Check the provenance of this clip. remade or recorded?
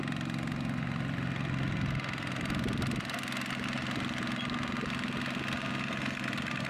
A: recorded